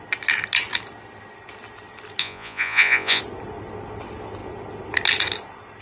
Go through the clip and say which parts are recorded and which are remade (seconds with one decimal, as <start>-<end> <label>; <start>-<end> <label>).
0.0-2.2 recorded; 2.2-3.2 remade; 3.2-5.8 recorded